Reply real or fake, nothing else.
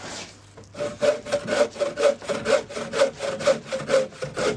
real